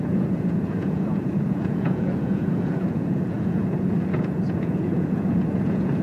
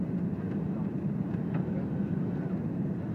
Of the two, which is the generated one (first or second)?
first